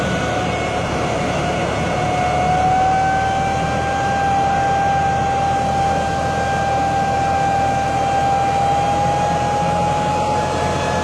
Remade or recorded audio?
recorded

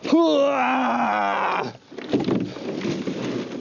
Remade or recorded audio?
recorded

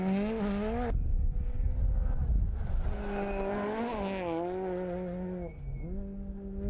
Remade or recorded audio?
recorded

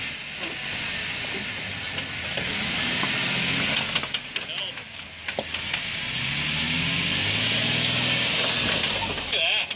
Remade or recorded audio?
recorded